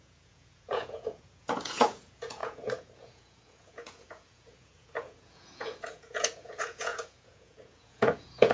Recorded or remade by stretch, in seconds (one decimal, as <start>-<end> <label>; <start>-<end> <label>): 0.0-8.5 remade